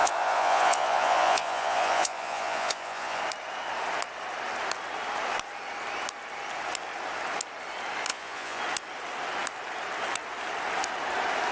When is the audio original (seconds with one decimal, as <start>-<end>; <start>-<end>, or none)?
3.2-8.1; 8.6-11.5